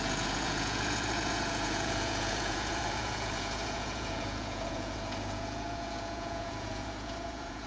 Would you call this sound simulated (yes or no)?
yes